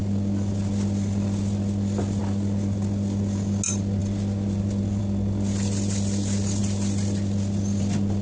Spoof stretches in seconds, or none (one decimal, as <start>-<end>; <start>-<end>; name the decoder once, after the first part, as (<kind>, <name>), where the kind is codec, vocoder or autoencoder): none